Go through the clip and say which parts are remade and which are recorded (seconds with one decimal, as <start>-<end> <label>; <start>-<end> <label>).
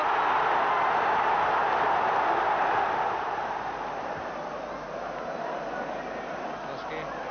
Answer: 0.0-7.3 recorded